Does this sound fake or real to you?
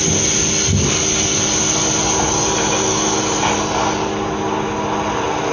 real